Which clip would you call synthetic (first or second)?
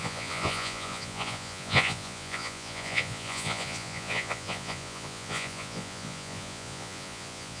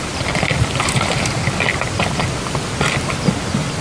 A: first